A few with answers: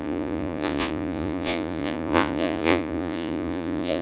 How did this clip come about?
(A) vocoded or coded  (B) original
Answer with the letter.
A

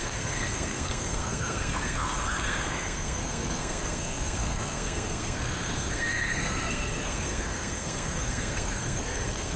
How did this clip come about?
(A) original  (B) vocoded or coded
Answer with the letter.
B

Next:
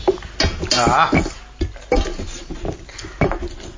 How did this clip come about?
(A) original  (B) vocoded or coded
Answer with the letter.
A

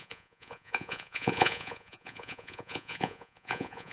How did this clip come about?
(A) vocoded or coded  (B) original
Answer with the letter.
A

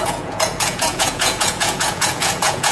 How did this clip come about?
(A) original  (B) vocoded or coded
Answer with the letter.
B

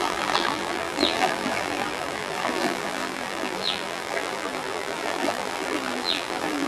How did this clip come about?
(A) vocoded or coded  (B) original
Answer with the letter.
A